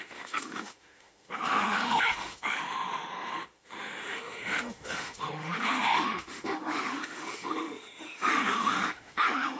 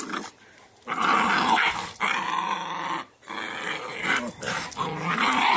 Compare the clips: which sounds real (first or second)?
second